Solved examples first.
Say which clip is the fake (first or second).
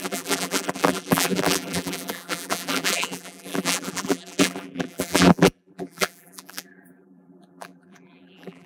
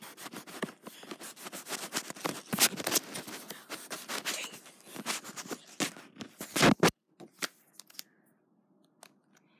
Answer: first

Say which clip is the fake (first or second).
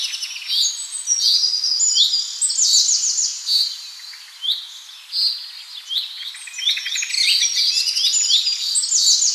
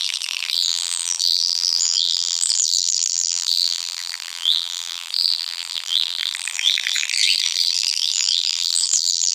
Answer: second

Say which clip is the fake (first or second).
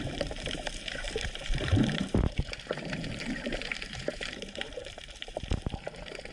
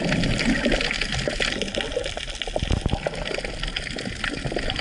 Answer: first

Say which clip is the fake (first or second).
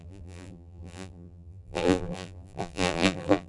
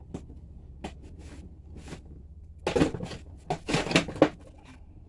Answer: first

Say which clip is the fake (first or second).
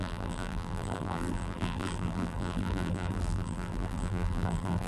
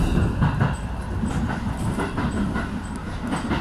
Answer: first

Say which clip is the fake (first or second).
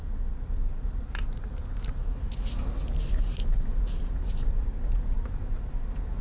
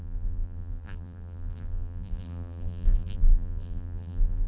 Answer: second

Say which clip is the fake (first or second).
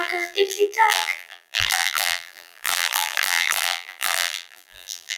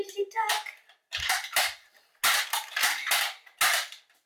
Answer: first